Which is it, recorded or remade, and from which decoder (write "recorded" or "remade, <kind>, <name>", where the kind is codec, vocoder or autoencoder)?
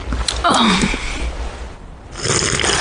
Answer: recorded